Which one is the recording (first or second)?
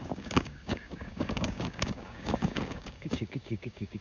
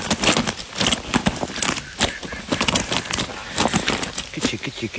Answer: second